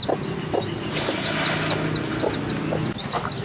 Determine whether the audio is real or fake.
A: real